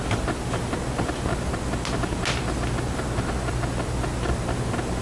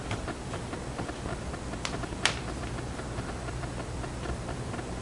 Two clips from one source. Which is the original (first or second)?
first